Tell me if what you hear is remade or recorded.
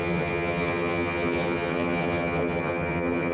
remade